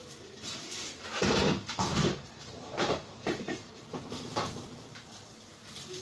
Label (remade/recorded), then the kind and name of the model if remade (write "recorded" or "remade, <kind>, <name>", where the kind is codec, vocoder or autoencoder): remade, vocoder, BigVGAN v2